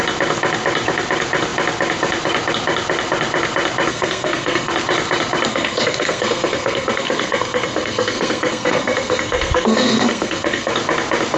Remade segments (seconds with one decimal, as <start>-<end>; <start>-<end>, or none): 3.9-4.7; 5.5-10.7